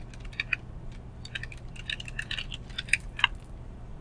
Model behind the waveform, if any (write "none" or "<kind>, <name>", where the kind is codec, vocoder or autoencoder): none